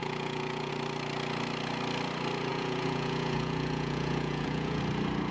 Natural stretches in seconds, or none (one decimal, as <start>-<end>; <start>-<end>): 0.7-2.5; 4.8-5.3